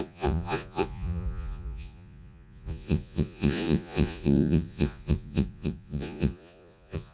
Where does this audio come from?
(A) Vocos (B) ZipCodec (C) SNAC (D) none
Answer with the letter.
A